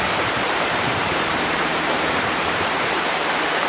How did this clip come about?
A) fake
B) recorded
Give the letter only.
A